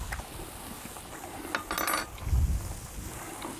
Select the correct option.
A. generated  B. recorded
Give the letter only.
B